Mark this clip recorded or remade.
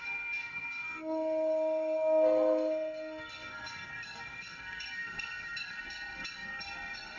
remade